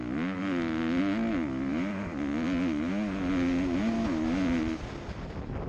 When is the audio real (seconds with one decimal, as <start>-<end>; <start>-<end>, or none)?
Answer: 0.0-5.7